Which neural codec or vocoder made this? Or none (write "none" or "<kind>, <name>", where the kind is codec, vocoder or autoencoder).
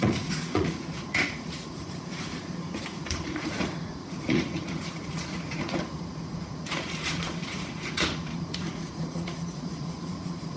vocoder, Vocos